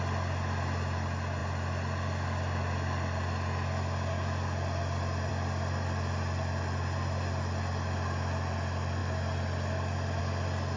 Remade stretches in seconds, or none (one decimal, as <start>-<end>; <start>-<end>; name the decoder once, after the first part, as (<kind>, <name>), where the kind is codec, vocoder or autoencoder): none